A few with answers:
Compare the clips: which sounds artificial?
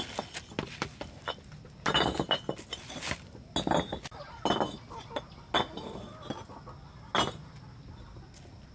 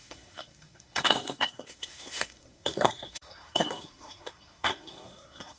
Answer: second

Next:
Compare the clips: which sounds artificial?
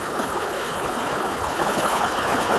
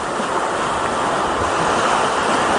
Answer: first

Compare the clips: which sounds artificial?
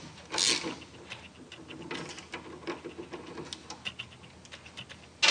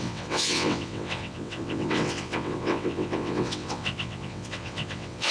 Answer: second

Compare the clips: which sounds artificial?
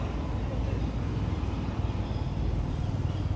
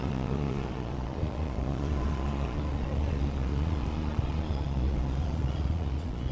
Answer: second